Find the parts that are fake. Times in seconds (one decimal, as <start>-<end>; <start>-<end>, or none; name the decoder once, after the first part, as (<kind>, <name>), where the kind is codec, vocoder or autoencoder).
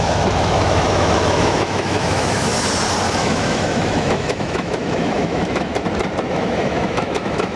0.0-2.5 (autoencoder, DAC-VAE); 3.1-5.7; 6.3-7.6